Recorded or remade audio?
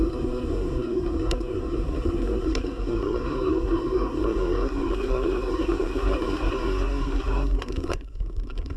remade